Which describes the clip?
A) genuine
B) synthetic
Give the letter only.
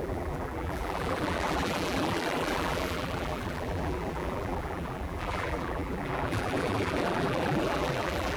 B